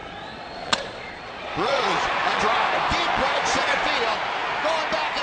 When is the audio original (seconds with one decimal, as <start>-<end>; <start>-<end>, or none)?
2.4-3.1; 3.9-5.2